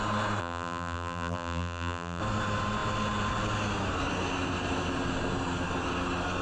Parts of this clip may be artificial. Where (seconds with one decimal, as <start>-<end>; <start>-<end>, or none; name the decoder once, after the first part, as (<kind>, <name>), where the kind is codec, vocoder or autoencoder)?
0.4-2.2 (vocoder, BigVGAN v2)